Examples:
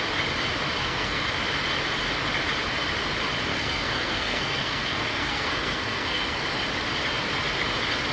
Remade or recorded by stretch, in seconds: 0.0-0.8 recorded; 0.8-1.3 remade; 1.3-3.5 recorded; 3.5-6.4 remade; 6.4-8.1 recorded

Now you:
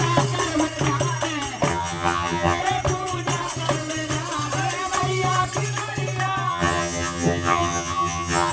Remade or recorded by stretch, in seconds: 0.0-1.7 recorded; 1.7-2.6 remade; 2.6-6.5 recorded; 6.5-8.5 remade

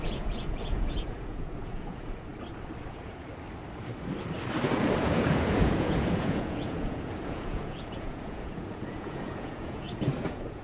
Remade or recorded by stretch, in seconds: 0.0-2.3 remade; 2.3-2.9 recorded; 2.9-3.3 remade; 3.3-4.7 recorded; 4.7-10.6 remade

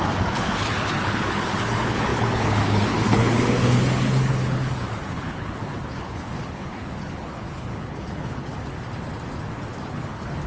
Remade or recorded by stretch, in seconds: 0.0-8.5 remade; 8.5-9.9 recorded; 9.9-10.5 remade